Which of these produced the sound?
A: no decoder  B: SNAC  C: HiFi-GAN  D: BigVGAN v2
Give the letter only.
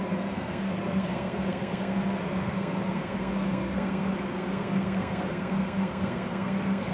B